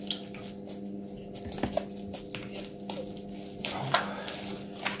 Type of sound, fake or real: real